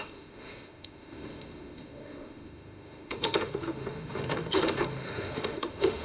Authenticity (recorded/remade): remade